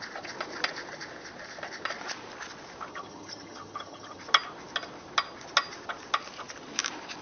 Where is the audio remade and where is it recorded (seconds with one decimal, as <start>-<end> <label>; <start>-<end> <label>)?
0.0-2.9 recorded; 2.9-4.2 remade; 4.2-7.2 recorded